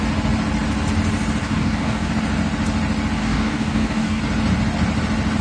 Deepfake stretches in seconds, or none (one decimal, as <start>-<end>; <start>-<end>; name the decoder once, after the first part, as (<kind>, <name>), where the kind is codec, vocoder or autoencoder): 1.4-2.1 (codec, DAC); 3.2-4.2